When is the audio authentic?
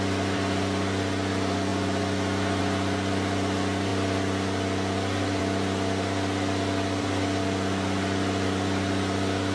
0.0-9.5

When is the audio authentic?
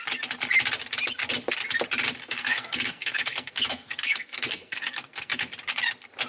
0.0-2.2; 5.5-6.3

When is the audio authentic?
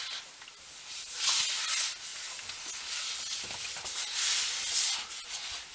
0.0-5.7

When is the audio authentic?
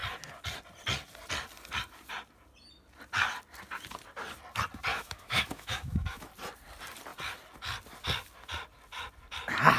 0.0-4.9; 6.3-9.8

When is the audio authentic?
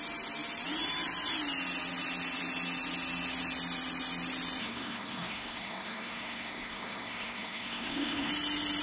0.0-4.6; 8.3-8.8